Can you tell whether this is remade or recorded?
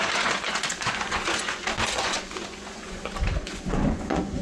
remade